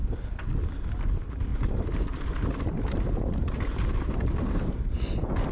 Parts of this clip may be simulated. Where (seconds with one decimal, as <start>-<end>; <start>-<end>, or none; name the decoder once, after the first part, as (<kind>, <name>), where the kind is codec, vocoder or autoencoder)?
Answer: 1.5-4.8 (vocoder, BigVGAN v2)